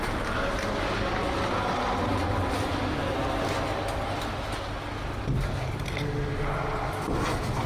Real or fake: real